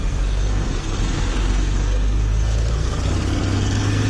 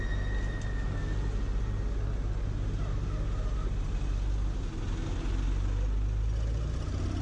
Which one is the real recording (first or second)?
second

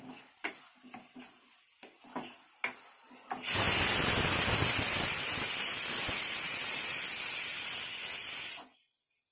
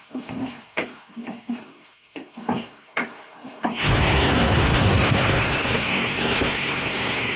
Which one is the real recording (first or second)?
first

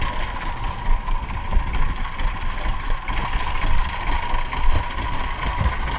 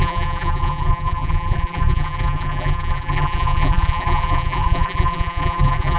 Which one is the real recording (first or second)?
first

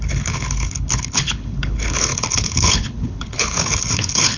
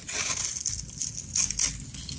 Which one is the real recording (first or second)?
second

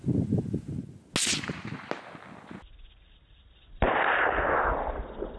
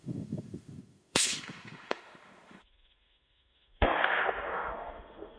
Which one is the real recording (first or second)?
first